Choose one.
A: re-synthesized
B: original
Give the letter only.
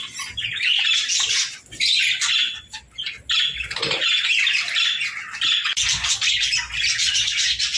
B